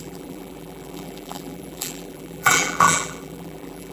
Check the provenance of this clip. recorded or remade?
remade